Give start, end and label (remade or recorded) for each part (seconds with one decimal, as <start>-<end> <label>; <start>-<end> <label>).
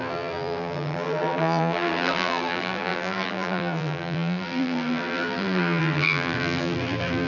0.0-7.3 remade